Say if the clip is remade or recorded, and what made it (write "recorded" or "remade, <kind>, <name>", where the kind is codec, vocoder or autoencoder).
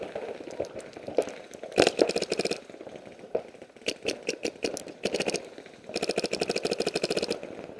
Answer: recorded